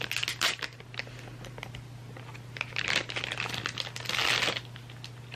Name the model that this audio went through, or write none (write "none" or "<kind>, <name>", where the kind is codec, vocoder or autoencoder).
none